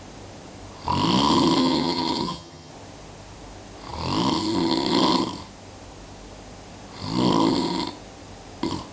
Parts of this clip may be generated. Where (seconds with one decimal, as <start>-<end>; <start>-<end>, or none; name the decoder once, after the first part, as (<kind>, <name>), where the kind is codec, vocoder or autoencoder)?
1.6-2.7 (vocoder, HiFi-GAN)